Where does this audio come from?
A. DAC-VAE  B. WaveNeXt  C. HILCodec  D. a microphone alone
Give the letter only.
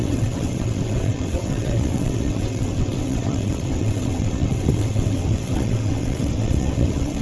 B